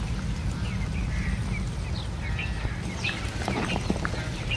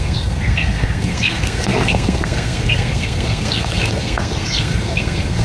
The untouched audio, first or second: first